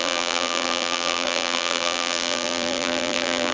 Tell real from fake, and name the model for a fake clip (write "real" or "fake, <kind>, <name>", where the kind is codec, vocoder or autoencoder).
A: fake, vocoder, BigVGAN v2